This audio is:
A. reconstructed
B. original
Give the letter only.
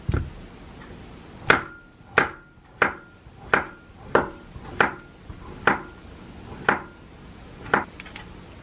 B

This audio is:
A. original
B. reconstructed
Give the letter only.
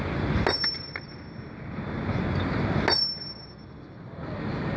A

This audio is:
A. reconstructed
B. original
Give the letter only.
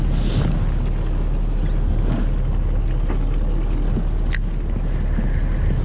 B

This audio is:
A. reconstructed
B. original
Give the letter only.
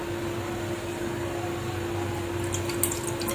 B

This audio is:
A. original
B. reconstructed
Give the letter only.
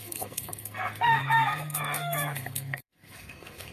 B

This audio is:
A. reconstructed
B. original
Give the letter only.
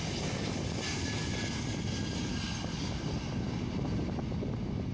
B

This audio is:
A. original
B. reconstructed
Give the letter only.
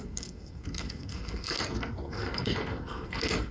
B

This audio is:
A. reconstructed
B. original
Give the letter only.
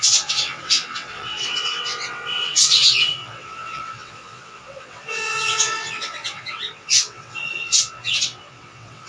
A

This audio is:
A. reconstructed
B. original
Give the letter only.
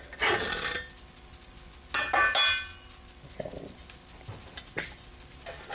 B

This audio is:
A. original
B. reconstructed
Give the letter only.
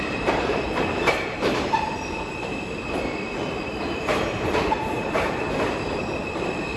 B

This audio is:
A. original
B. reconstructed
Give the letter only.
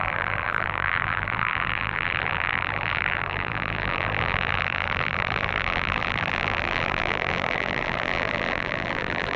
B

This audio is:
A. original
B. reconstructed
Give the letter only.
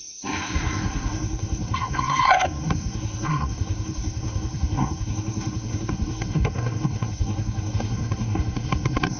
B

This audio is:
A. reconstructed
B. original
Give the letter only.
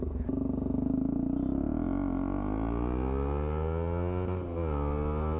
B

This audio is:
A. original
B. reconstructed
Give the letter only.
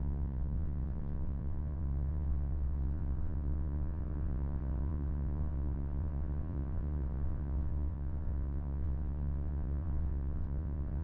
B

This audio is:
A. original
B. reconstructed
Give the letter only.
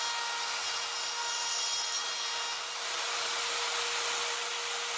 A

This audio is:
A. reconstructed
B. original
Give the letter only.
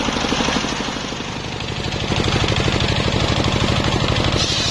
B